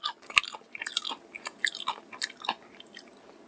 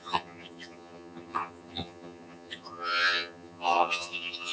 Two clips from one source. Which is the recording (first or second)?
first